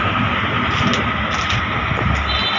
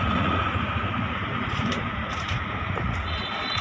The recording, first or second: first